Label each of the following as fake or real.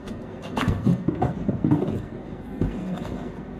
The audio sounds fake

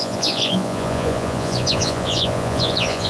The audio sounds fake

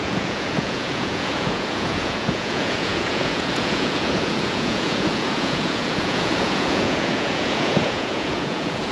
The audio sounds fake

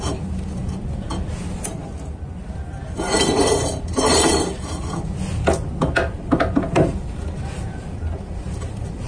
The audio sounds real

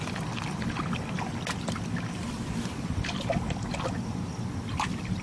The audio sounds real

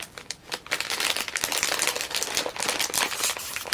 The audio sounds real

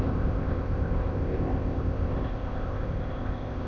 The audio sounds fake